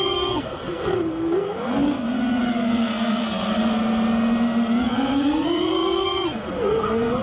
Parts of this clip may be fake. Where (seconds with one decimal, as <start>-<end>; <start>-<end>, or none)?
0.0-3.6; 4.8-7.2